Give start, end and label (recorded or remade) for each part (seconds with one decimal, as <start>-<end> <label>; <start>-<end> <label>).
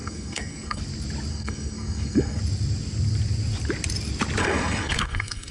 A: 0.0-0.8 remade; 0.8-1.3 recorded; 1.3-2.4 remade; 2.4-4.4 recorded; 4.4-5.5 remade